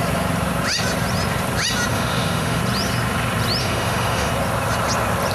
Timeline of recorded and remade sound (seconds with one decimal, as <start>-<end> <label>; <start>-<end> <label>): 0.0-1.9 recorded; 1.9-2.6 remade; 2.6-3.6 recorded; 3.6-4.3 remade; 4.3-5.3 recorded